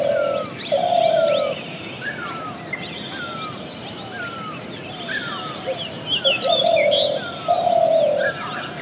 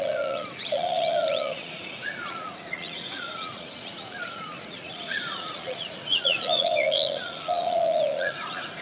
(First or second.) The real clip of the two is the first